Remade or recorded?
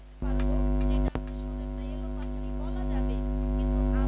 recorded